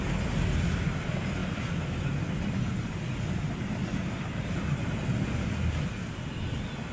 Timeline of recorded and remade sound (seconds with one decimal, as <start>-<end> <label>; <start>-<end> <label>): 0.0-6.9 recorded